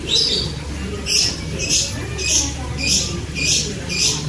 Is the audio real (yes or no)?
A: yes